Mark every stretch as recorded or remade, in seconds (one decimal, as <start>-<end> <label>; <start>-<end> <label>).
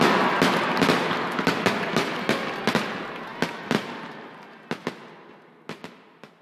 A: 0.0-6.4 recorded